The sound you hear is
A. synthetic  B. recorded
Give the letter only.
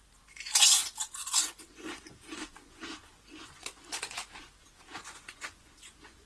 A